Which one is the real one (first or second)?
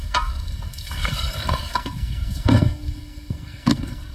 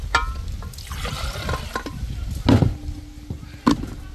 second